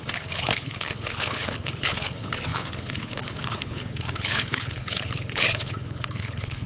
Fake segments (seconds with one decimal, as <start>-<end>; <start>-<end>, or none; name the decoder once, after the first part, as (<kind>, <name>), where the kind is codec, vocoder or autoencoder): 0.0-6.7 (codec, HILCodec)